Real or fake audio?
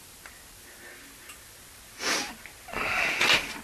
real